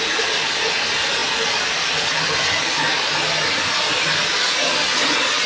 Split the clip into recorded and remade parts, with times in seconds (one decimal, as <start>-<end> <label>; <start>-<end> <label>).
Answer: 0.0-5.5 recorded